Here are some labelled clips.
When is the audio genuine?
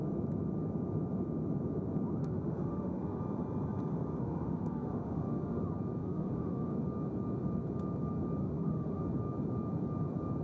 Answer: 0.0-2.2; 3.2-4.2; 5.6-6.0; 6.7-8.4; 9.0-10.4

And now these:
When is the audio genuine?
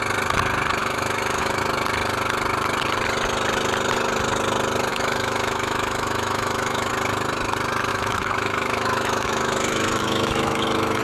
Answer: 0.0-0.8; 1.6-4.9; 6.9-7.9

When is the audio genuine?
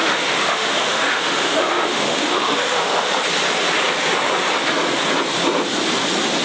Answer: 3.1-6.4